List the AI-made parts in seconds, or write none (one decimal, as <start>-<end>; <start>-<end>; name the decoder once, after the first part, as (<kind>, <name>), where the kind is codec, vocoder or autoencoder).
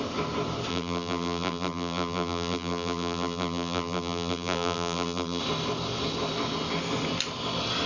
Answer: 0.7-5.4 (vocoder, BigVGAN v2)